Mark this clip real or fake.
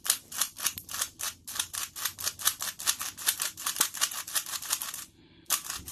real